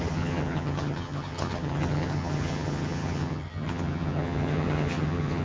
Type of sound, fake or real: fake